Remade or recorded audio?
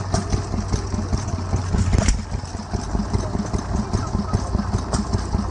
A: recorded